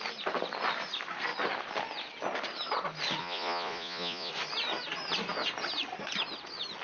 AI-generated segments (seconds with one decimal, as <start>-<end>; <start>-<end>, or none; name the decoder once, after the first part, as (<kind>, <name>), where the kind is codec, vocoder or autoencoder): 3.2-4.3 (vocoder, Vocos)

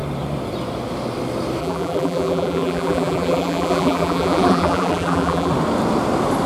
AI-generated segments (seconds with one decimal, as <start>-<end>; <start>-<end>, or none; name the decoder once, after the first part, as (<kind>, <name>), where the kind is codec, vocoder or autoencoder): 1.6-5.5 (vocoder, BigVGAN v2)

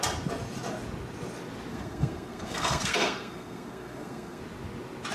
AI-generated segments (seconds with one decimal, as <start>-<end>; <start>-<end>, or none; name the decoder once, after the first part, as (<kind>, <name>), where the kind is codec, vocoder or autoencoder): 1.7-4.4 (codec, SNAC)